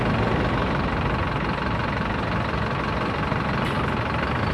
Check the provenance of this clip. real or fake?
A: real